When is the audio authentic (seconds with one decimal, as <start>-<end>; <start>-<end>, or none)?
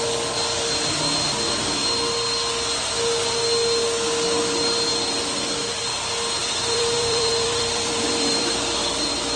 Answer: 0.0-6.4; 8.5-9.4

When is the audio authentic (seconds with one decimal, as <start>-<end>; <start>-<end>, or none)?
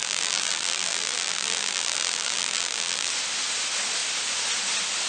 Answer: 3.1-5.1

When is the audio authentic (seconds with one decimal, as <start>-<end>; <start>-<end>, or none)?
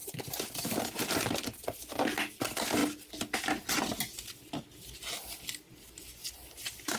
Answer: 0.9-2.8; 4.0-6.2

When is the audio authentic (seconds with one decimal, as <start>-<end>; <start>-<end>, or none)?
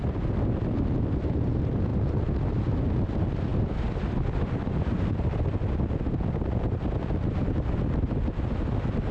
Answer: 0.0-3.5; 5.1-9.1